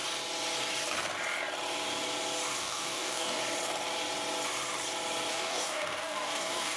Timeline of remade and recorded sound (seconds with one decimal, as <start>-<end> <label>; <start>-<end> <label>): 0.0-2.6 recorded; 2.6-3.4 remade; 3.4-5.3 recorded; 5.3-6.8 remade